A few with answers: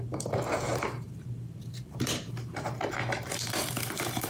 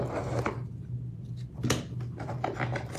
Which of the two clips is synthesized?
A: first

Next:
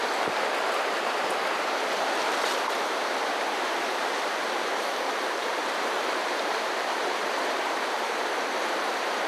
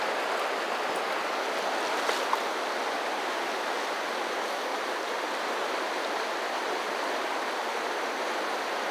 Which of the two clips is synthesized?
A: first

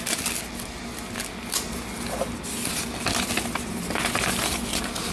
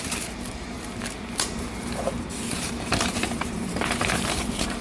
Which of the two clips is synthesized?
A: second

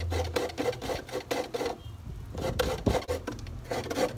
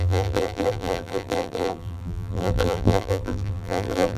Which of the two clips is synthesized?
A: second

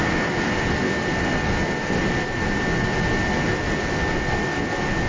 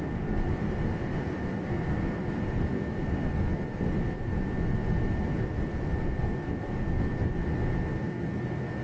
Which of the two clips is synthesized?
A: second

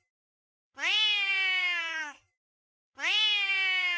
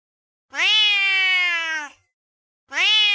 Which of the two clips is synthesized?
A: first